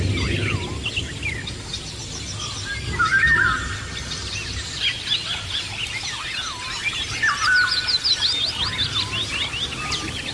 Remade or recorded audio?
recorded